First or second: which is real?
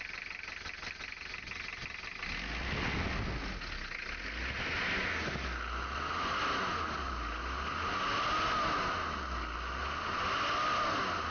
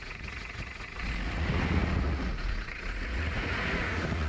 first